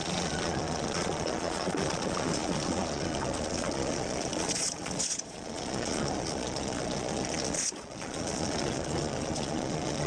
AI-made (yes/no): yes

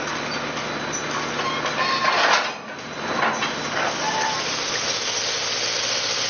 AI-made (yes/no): no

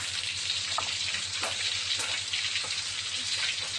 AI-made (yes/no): no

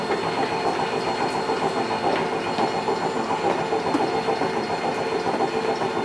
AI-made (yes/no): no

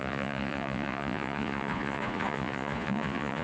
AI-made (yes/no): yes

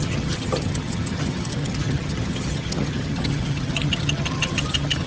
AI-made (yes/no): yes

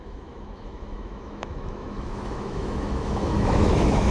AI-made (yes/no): yes